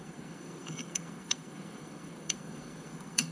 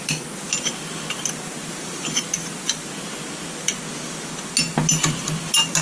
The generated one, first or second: first